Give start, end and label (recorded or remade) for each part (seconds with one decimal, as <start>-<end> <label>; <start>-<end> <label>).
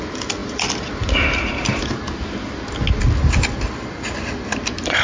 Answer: 0.0-5.0 recorded